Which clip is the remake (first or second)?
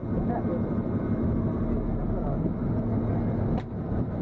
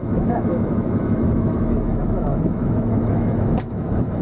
second